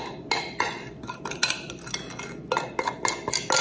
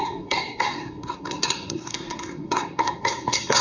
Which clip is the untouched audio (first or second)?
first